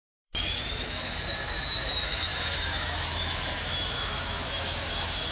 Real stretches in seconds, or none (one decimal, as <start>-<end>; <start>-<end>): none